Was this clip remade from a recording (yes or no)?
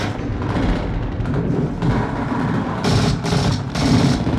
no